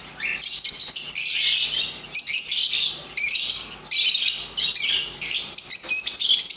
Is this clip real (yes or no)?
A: yes